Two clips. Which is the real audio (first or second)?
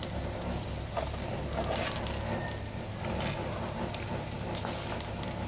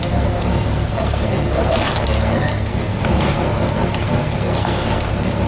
first